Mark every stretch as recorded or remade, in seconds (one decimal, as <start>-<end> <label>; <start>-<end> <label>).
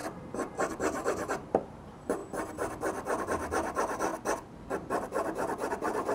0.0-2.2 remade; 2.2-3.2 recorded; 3.2-4.1 remade; 4.1-4.9 recorded; 4.9-6.1 remade